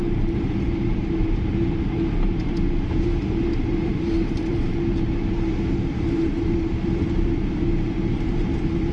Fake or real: fake